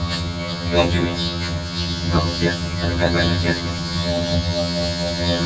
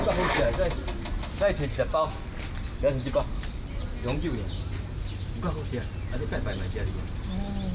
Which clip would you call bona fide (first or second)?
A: second